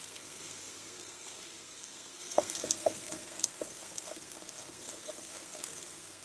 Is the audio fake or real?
fake